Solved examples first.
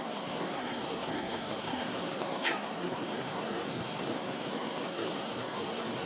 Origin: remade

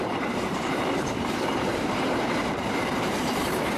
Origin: remade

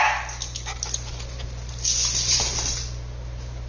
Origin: recorded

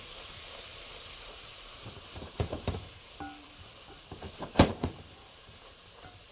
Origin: remade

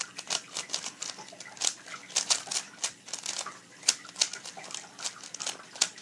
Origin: recorded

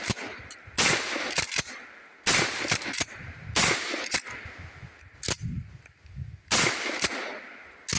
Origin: recorded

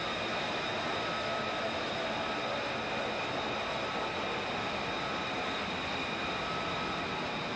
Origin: recorded